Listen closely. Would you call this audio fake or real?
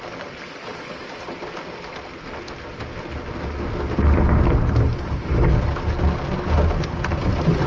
real